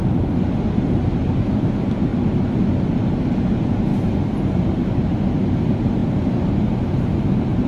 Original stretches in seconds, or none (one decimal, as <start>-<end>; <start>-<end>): 2.1-3.4